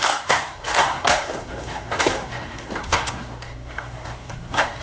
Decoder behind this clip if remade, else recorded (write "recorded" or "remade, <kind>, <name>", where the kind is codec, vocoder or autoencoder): remade, codec, SNAC